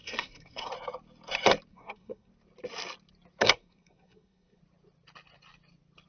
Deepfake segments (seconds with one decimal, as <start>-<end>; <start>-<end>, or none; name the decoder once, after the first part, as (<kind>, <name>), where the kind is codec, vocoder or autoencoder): 0.0-0.7 (codec, SNAC); 1.7-2.3; 3.4-4.6